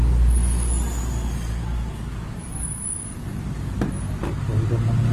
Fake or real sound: real